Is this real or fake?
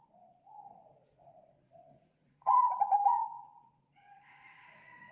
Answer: fake